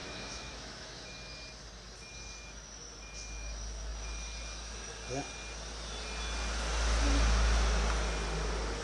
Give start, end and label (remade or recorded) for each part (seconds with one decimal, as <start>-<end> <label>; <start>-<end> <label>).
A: 0.0-1.1 remade; 1.1-8.8 recorded

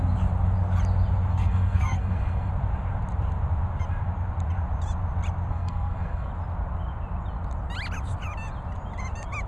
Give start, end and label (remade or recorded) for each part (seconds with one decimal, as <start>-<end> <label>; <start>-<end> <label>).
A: 0.0-1.3 recorded; 1.3-2.5 remade; 2.5-5.5 recorded; 5.5-6.3 remade; 6.3-9.5 recorded

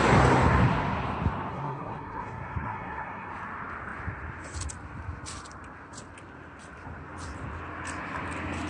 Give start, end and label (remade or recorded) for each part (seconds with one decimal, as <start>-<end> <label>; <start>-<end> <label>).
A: 0.0-1.5 recorded; 1.5-3.3 remade; 3.3-8.7 recorded

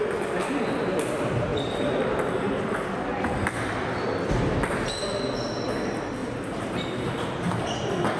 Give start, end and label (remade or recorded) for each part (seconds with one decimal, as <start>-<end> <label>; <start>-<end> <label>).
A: 0.0-6.2 recorded; 6.2-7.6 remade; 7.6-8.2 recorded

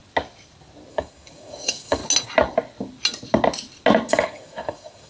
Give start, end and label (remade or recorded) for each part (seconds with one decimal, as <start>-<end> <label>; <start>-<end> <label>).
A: 0.0-0.9 recorded; 0.9-2.0 remade; 2.0-4.1 recorded; 4.1-5.1 remade

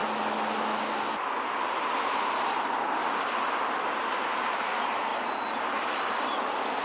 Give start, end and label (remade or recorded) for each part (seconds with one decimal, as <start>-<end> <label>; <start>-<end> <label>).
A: 0.0-6.8 recorded